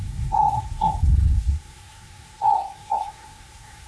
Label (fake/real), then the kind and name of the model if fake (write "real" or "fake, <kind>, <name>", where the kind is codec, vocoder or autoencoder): fake, codec, SNAC